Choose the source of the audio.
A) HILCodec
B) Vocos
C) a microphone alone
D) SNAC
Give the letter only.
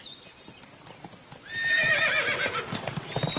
C